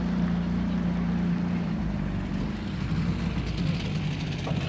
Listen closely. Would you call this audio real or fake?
real